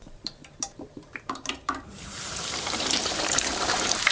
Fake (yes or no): yes